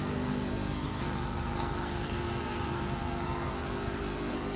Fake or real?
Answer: fake